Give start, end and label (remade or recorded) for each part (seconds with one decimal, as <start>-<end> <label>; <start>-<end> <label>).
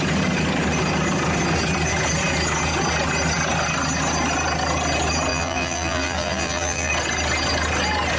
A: 0.0-5.3 recorded; 5.3-6.9 remade; 6.9-8.2 recorded